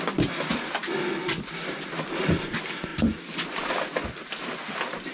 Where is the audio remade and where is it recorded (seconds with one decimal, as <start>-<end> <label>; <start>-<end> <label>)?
0.0-5.1 recorded